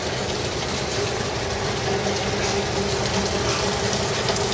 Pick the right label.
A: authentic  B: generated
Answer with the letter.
A